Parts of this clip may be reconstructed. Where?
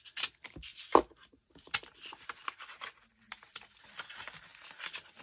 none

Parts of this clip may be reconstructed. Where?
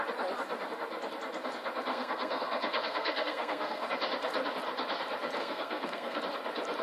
1.9-3.9 (codec, SNAC); 5.4-6.2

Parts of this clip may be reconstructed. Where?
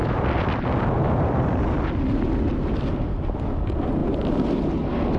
none